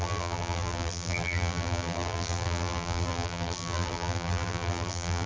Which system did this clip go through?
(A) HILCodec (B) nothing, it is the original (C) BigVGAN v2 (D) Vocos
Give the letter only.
C